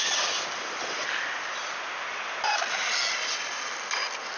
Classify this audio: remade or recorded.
recorded